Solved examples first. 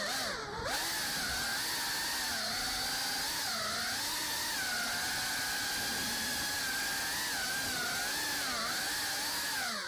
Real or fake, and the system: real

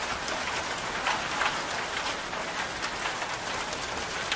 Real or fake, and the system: real